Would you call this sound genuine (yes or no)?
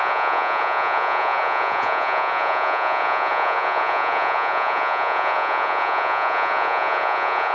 no